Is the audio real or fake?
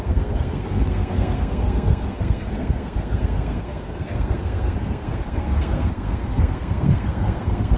fake